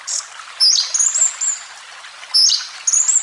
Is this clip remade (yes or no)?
no